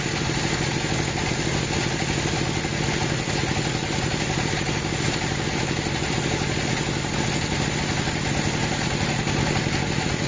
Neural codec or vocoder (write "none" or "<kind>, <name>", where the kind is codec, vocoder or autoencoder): none